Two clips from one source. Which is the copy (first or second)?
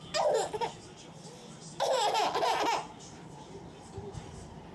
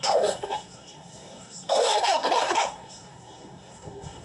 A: second